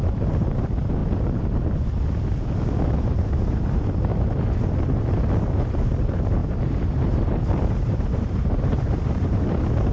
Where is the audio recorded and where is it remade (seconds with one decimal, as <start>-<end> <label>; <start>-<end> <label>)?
0.0-1.0 remade; 1.0-2.8 recorded; 2.8-4.1 remade; 4.1-5.3 recorded; 5.3-9.9 remade